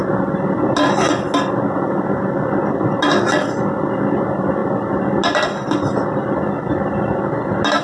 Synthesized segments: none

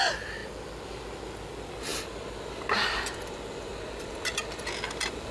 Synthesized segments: none

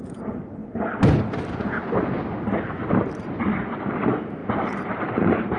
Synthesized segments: 0.0-0.6 (vocoder, BigVGAN v2); 3.8-5.6

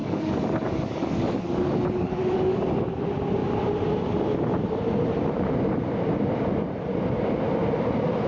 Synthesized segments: 0.0-3.0 (codec, DAC)

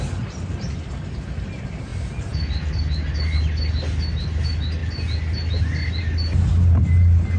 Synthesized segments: none

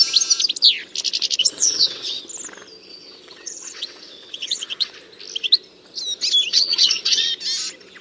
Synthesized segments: 1.4-2.2 (vocoder, WaveNeXt); 2.9-4.9; 6.5-7.3